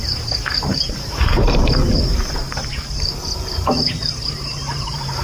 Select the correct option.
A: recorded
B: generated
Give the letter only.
B